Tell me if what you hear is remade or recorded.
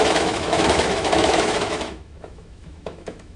remade